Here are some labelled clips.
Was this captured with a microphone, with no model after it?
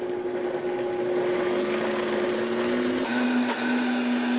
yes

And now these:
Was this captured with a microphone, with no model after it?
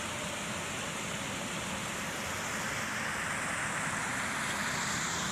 yes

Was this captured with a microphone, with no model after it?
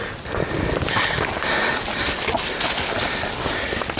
yes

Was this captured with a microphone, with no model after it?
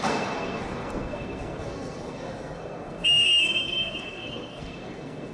no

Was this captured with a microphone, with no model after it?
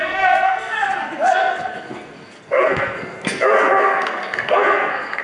no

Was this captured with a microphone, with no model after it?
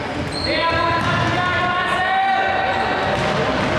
yes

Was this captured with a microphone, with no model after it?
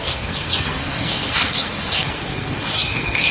no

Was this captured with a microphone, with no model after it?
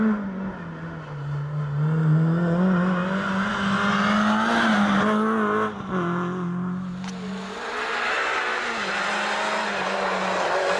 yes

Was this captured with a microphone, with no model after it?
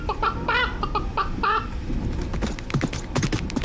yes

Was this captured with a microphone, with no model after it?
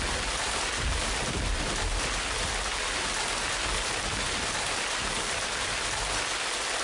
yes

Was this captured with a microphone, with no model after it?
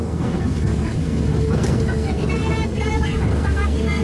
no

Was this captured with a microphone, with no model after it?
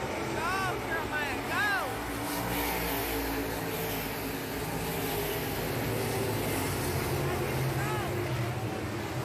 yes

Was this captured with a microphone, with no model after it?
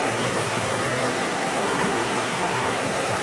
no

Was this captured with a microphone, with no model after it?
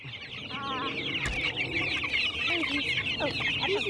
yes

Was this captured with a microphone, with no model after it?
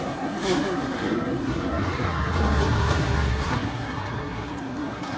no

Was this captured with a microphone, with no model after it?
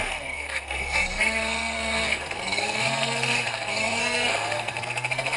no